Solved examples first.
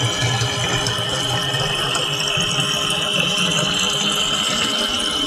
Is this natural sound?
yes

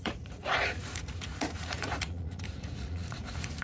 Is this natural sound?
no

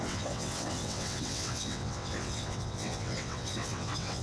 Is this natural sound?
no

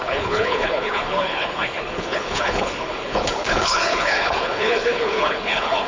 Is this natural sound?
no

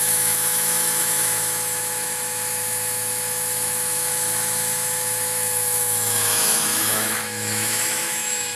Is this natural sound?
no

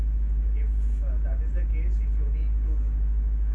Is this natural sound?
yes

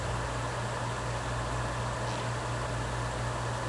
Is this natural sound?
yes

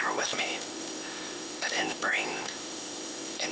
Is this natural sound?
no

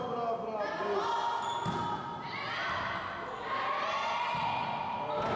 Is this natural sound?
yes